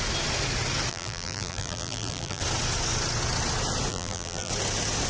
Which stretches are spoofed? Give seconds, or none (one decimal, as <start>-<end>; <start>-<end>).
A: 0.9-2.4; 3.9-4.5